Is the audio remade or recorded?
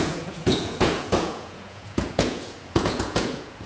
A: remade